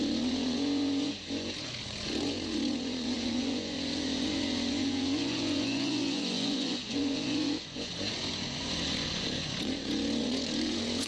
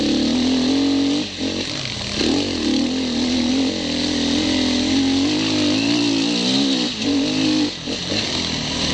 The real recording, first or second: second